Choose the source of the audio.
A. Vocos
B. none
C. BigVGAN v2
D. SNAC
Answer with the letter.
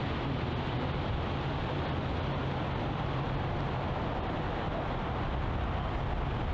B